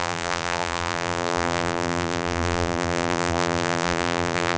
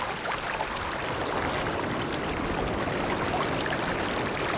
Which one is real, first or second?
second